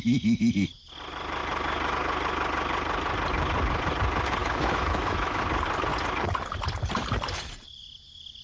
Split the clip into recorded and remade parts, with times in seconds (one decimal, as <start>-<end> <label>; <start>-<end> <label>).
0.0-4.4 recorded; 4.4-5.4 remade; 5.4-8.4 recorded